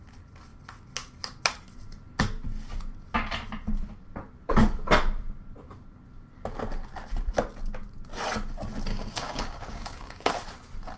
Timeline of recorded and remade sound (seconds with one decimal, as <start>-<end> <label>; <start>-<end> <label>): 0.0-8.9 recorded; 8.9-10.3 remade; 10.3-11.0 recorded